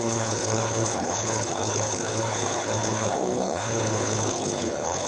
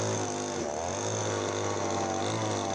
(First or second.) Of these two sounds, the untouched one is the second